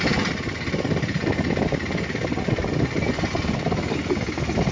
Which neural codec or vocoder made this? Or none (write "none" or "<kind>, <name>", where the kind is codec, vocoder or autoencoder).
none